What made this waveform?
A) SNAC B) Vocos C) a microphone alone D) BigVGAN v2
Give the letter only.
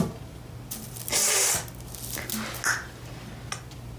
C